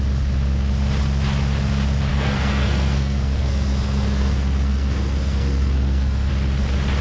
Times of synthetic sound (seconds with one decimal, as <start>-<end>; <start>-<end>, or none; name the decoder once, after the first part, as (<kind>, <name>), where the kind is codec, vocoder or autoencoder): 2.1-6.3 (codec, SNAC)